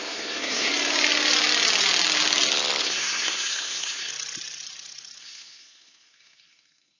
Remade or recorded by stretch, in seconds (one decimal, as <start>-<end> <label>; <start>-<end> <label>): 0.0-0.7 remade; 0.7-2.8 recorded; 2.8-4.1 remade; 4.1-5.2 recorded; 5.2-7.0 remade